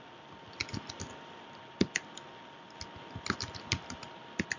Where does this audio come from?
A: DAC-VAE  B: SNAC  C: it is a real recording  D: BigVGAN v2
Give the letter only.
C